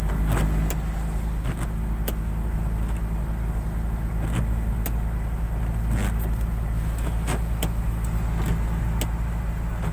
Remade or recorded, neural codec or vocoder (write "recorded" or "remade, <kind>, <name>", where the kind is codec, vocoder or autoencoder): recorded